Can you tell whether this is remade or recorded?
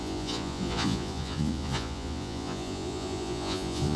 remade